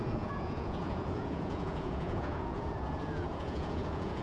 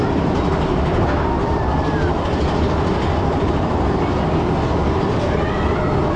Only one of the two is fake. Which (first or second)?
first